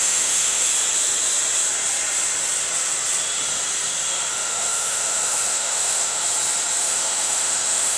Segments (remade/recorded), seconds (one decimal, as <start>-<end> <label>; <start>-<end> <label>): 0.0-0.7 remade; 0.7-4.3 recorded; 4.3-6.2 remade; 6.2-6.8 recorded; 6.8-8.0 remade